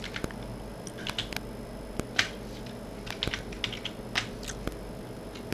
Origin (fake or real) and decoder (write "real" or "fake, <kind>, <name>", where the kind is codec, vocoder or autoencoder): real